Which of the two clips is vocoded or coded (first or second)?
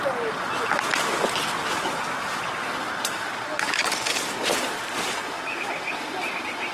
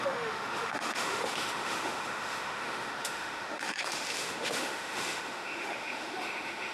second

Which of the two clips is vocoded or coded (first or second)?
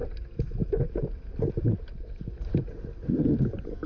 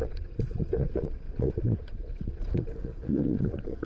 second